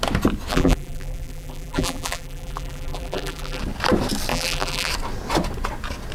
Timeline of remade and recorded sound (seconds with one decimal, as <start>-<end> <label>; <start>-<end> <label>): 0.0-0.5 recorded; 0.5-3.6 remade; 3.6-4.3 recorded; 4.3-4.9 remade; 4.9-6.1 recorded

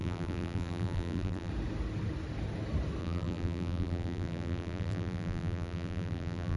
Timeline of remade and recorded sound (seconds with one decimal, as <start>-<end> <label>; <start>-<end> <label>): 0.0-1.5 remade; 1.5-3.0 recorded; 3.0-6.6 remade